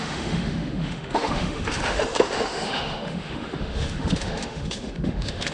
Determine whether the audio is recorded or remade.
remade